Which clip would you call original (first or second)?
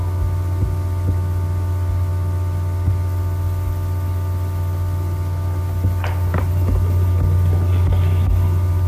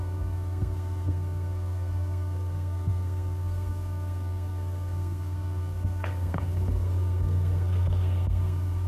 first